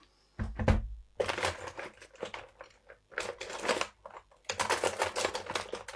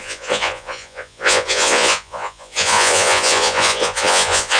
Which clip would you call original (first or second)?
first